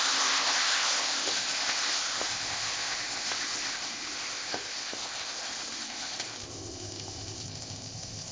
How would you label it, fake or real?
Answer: fake